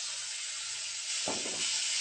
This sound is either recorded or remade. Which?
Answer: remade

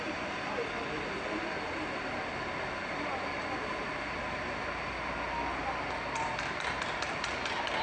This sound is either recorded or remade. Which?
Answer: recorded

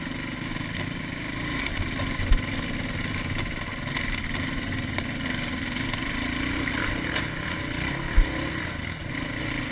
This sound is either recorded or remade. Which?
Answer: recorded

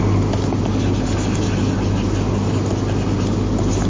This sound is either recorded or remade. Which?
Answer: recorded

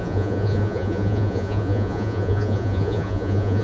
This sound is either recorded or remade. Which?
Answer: remade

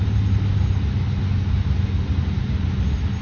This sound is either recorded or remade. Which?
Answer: recorded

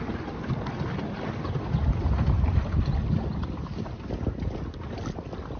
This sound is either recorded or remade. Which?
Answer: recorded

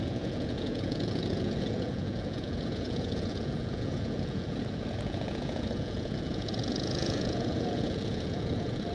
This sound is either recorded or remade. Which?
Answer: remade